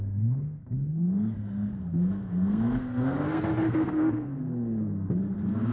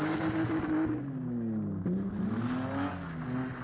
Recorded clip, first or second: second